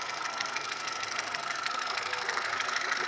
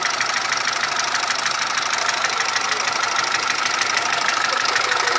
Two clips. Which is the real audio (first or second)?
second